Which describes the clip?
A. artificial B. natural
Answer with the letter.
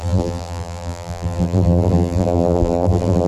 A